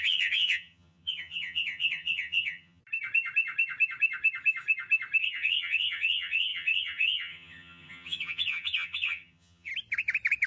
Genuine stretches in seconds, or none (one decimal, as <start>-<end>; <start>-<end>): 2.8-5.2; 9.7-10.5